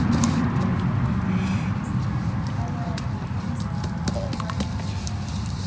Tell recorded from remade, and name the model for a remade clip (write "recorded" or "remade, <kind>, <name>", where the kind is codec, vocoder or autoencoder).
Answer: recorded